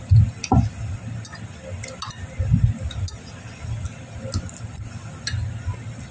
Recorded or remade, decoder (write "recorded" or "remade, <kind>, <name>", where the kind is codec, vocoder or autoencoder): recorded